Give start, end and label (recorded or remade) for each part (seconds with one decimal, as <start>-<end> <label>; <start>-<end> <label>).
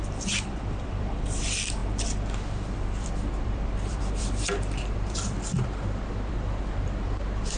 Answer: 0.0-1.8 remade; 1.8-2.4 recorded; 2.4-7.6 remade